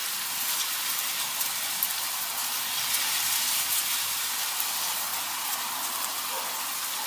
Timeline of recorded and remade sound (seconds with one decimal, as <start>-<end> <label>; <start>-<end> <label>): 0.0-7.1 recorded